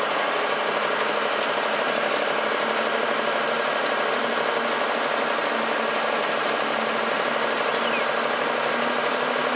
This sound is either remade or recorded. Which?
recorded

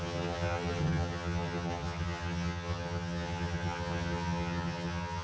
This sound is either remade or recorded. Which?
remade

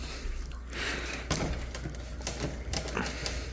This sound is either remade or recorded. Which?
recorded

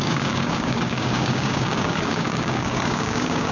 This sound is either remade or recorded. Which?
remade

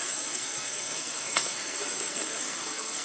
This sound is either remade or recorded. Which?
remade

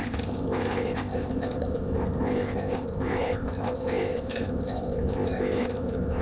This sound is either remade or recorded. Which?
remade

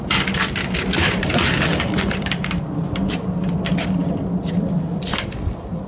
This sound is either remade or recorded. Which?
remade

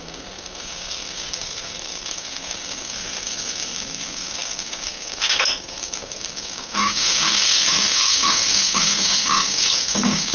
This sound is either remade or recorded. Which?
remade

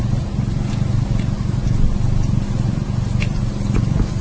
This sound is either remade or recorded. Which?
recorded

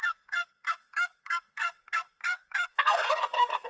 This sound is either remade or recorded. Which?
remade